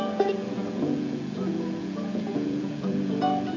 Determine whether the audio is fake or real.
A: fake